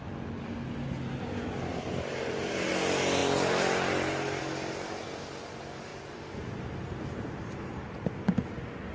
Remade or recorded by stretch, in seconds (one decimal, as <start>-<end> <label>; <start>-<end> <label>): 0.0-1.7 recorded; 1.7-2.7 remade; 2.7-5.9 recorded; 5.9-7.7 remade; 7.7-8.9 recorded